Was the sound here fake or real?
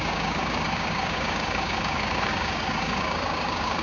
fake